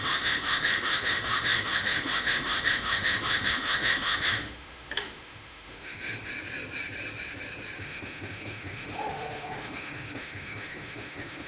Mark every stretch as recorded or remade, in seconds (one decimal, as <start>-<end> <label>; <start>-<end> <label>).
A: 0.0-6.3 remade; 6.3-7.8 recorded; 7.8-11.5 remade